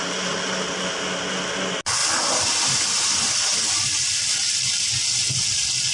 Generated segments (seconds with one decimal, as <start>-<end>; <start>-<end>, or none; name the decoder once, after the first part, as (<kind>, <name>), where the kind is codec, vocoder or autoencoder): none